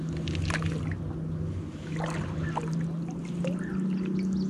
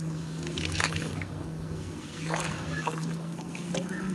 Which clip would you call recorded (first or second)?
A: first